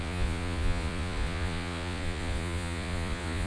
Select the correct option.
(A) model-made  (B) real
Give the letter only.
A